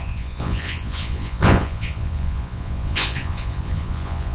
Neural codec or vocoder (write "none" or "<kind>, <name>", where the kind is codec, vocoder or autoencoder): vocoder, Vocos